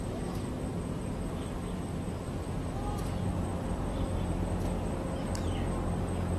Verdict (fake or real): real